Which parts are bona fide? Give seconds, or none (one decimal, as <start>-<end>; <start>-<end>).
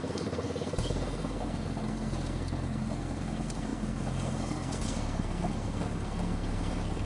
none